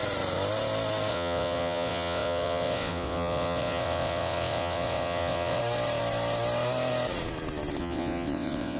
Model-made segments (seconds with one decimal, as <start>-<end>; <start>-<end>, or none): 1.1-5.6; 7.8-8.8